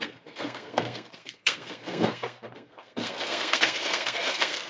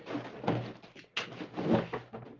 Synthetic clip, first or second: first